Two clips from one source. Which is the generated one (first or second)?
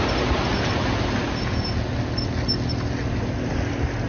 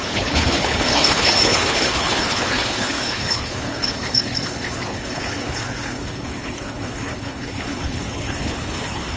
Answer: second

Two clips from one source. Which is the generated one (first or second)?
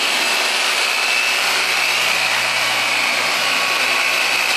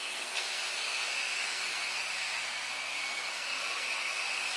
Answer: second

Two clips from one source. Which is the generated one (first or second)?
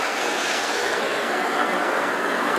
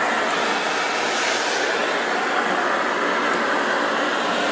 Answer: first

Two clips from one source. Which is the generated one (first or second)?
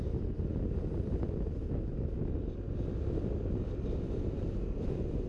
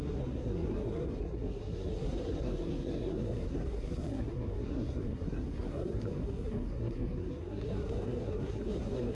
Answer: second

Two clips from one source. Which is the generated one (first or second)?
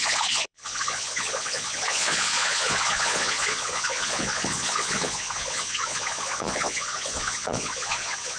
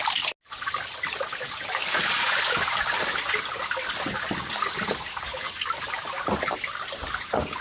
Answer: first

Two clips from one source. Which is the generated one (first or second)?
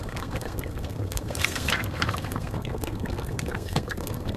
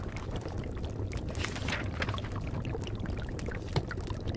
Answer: first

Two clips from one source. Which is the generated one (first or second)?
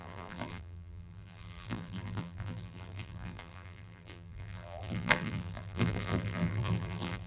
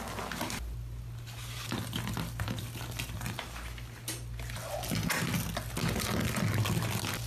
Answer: first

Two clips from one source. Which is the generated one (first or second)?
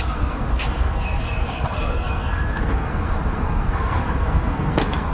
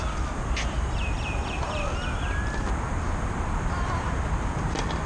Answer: first